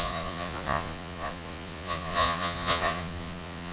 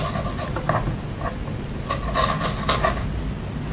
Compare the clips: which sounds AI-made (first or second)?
first